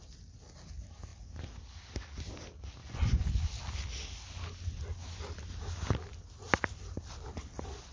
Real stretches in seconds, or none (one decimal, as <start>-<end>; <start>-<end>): 0.0-2.8; 3.3-7.9

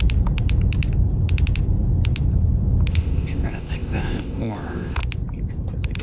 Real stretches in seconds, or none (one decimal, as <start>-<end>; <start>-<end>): 0.0-2.9; 5.0-6.0

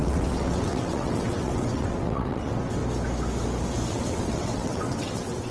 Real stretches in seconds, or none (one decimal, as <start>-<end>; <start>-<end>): 2.8-3.9

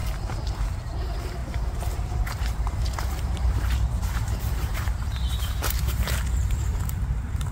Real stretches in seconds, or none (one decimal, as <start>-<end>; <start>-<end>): 0.0-0.9

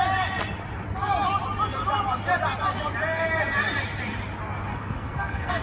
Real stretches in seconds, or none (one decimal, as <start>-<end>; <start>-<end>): 0.0-4.7

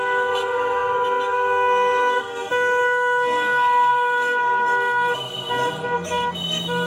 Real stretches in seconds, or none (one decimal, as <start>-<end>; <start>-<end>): none

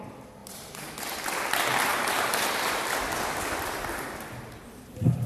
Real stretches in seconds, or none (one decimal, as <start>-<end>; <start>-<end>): 0.0-0.4; 0.9-1.9; 2.7-5.3